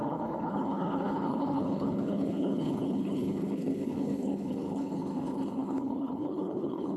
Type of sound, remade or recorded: remade